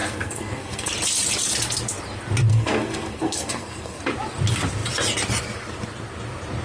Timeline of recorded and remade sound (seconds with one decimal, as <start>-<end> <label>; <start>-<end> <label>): 0.0-0.9 remade; 0.9-2.5 recorded; 2.5-4.0 remade; 4.0-6.6 recorded